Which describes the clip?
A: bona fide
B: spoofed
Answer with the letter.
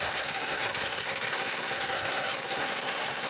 B